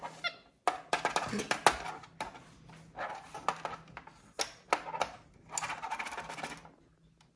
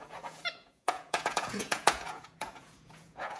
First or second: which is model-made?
second